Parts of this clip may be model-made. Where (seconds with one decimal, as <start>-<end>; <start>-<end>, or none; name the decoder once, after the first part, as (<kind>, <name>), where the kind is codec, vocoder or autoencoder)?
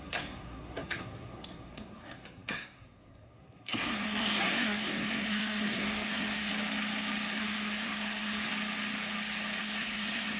0.0-6.5 (codec, SNAC); 7.4-8.5; 9.6-10.4